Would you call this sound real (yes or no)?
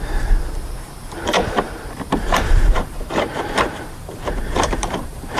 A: no